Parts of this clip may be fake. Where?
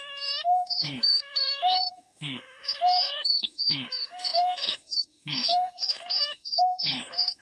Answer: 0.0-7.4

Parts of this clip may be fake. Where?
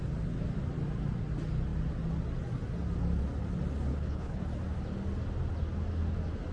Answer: 3.9-4.4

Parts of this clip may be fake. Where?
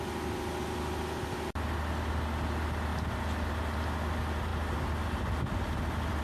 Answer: none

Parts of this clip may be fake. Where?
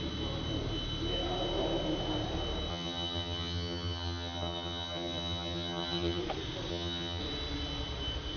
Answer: 2.7-6.2; 6.7-7.2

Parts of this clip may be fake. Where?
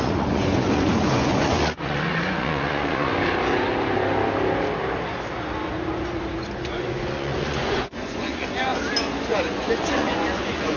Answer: 0.0-3.1; 6.5-8.7; 9.3-10.8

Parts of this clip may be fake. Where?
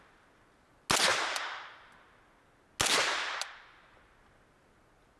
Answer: none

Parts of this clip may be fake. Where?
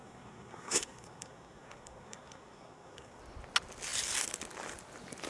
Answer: 0.0-3.2